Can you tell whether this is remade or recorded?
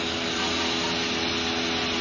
recorded